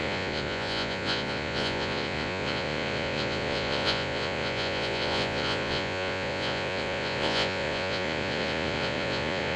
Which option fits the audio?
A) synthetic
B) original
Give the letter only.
A